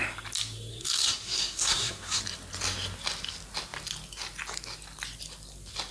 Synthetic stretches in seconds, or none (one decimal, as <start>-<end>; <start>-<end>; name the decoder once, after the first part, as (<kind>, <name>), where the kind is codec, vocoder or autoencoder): 0.7-2.2 (codec, SNAC)